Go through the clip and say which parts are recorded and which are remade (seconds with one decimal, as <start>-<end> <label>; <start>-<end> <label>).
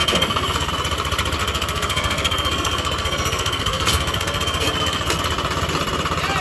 0.0-0.7 remade; 0.7-1.4 recorded; 1.4-5.2 remade; 5.2-6.4 recorded